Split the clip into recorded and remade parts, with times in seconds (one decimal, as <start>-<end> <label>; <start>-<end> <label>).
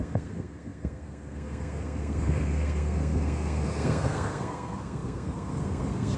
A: 0.0-6.2 remade